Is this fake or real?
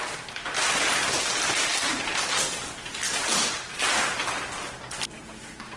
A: real